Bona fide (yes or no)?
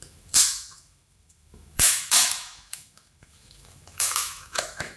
no